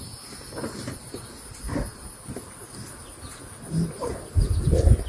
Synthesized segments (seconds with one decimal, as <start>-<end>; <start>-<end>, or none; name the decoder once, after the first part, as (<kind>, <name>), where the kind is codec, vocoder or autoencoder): none